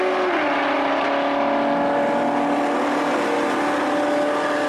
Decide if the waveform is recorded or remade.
recorded